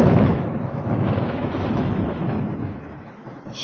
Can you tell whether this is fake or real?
fake